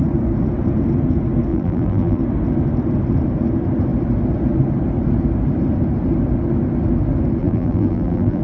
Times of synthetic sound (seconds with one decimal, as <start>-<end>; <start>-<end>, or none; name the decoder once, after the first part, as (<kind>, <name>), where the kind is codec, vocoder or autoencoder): 1.5-2.2 (vocoder, BigVGAN v2); 7.4-8.4